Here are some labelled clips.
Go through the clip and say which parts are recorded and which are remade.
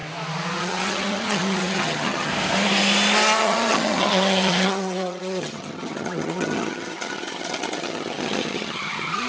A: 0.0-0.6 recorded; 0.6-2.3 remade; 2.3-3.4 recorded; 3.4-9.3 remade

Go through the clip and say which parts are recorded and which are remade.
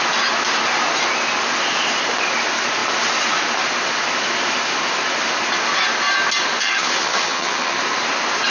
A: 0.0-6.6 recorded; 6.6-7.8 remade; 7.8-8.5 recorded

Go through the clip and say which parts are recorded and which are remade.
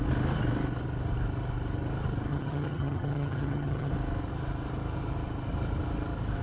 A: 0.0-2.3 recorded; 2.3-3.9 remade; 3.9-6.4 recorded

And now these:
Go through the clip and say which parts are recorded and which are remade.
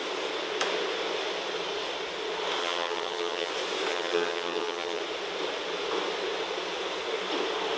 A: 0.0-2.6 recorded; 2.6-3.5 remade; 3.5-3.9 recorded; 3.9-5.0 remade; 5.0-7.8 recorded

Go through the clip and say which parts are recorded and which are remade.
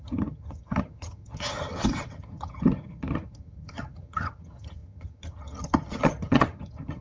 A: 0.0-7.0 remade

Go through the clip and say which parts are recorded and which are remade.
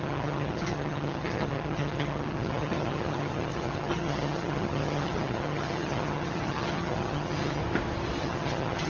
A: 0.0-7.6 remade; 7.6-8.2 recorded; 8.2-8.9 remade